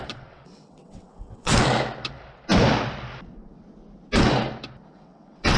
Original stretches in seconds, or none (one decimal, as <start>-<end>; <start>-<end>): 1.5-4.9

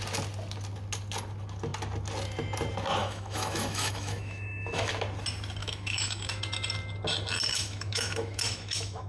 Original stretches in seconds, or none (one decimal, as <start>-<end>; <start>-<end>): 0.0-3.0; 4.9-5.6; 6.4-7.5

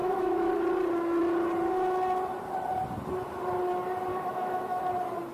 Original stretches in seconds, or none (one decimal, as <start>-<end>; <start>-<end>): 0.5-4.1; 4.8-5.3